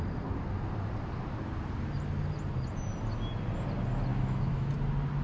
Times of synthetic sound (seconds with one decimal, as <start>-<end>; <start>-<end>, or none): 4.1-4.7